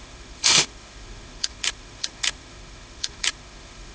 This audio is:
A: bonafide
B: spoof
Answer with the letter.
B